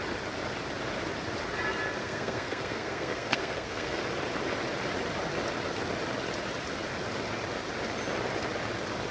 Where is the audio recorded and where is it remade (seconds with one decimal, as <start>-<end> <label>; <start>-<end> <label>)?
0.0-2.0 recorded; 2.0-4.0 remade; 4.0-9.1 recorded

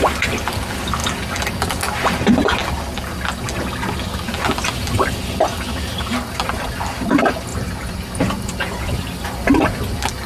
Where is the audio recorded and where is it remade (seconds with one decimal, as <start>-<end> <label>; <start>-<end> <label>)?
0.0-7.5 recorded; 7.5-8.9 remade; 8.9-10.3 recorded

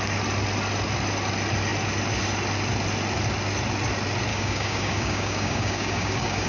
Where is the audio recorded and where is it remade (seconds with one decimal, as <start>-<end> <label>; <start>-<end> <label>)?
0.0-4.3 recorded; 4.3-6.5 remade

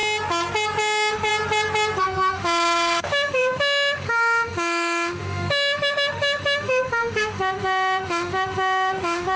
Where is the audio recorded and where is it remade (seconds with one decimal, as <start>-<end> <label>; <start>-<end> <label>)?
0.0-0.8 recorded; 0.8-1.3 remade; 1.3-2.0 recorded; 2.0-9.4 remade

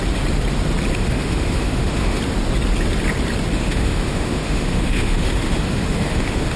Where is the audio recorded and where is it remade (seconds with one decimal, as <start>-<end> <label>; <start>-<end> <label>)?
0.0-0.9 recorded; 0.9-2.2 remade; 2.2-3.5 recorded; 3.5-6.6 remade

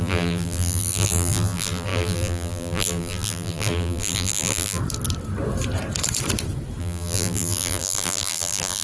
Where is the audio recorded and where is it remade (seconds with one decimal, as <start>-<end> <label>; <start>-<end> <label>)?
0.0-4.8 remade; 4.8-6.8 recorded; 6.8-8.8 remade

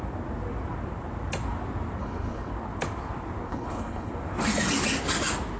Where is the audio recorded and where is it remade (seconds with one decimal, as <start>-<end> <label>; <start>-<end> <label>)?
0.0-2.0 recorded; 2.0-2.5 remade; 2.5-3.5 recorded; 3.5-4.1 remade; 4.1-5.6 recorded

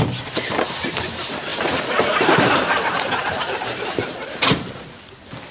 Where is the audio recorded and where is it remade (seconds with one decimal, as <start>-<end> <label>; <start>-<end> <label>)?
0.0-5.5 recorded